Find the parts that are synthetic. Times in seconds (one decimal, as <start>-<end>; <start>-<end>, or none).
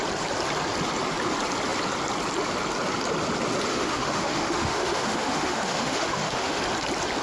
3.7-6.6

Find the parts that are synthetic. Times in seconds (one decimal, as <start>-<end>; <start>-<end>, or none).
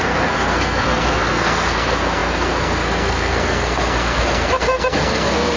0.0-5.6